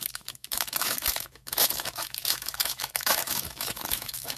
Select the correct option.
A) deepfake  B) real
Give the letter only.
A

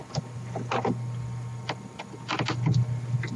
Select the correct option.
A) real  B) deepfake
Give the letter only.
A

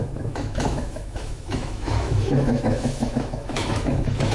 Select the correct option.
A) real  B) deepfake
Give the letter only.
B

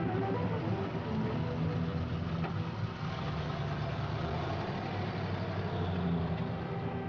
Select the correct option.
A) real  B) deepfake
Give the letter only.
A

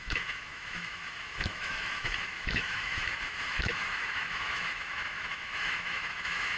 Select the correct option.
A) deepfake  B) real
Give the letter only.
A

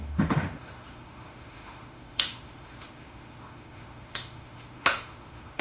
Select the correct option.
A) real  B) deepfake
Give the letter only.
B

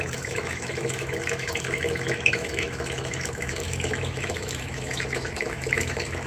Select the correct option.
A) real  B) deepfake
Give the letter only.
B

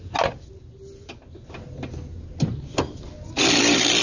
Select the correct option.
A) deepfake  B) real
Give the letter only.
B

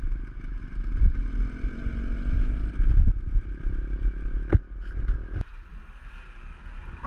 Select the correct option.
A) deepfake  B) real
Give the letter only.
B